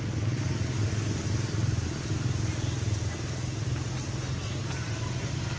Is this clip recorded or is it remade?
recorded